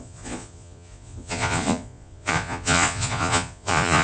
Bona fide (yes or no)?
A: no